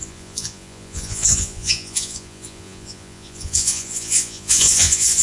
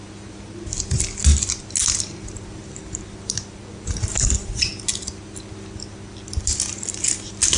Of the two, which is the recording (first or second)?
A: second